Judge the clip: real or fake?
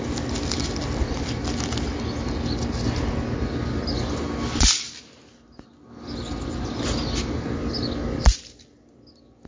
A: real